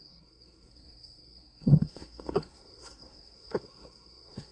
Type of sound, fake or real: fake